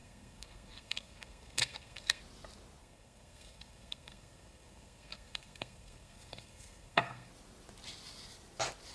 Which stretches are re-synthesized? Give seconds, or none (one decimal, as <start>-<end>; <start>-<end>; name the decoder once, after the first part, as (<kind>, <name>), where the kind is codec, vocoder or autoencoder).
0.0-2.2 (codec, SNAC); 2.8-7.3